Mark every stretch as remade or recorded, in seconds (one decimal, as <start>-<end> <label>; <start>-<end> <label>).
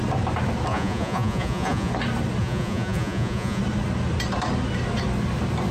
0.0-0.7 recorded; 0.7-1.9 remade; 1.9-2.4 recorded; 2.4-3.6 remade; 3.6-5.7 recorded